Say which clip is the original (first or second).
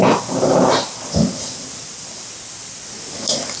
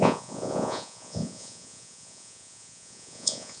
first